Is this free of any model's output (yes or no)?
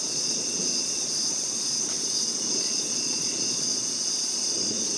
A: no